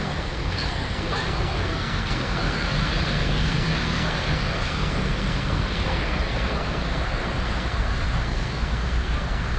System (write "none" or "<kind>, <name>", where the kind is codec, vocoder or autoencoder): codec, SNAC